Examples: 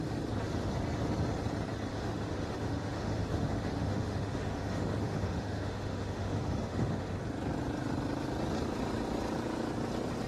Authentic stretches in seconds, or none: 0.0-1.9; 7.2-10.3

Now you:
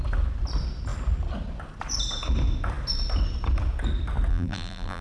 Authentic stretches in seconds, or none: 0.0-4.3

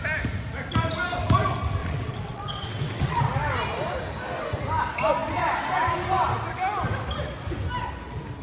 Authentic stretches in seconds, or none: 0.0-1.8; 3.2-8.4